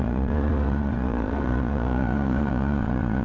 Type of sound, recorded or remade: remade